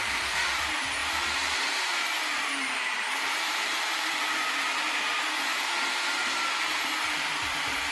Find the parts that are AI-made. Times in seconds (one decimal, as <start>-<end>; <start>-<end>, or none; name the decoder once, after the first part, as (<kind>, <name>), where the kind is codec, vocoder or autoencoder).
0.0-6.2 (vocoder, BigVGAN v2); 7.0-7.9